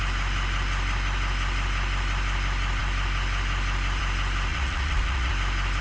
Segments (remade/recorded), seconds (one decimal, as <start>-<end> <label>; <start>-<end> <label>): 0.0-4.5 recorded; 4.5-5.3 remade; 5.3-5.8 recorded